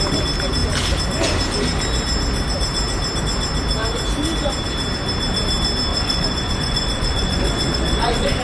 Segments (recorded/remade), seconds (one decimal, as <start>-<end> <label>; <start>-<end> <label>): 0.0-5.9 recorded; 5.9-8.4 remade